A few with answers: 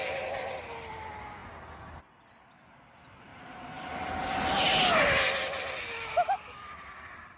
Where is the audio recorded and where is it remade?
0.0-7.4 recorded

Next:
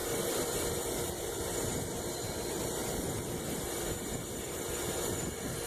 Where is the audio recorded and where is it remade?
0.0-1.4 remade; 1.4-2.8 recorded; 2.8-4.7 remade; 4.7-5.7 recorded

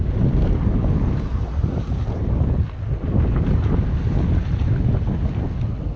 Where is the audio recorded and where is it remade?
0.0-6.0 recorded